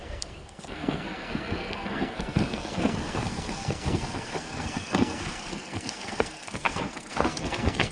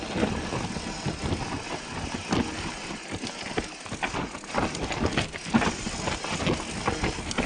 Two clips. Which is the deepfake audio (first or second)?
first